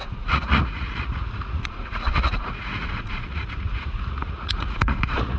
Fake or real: fake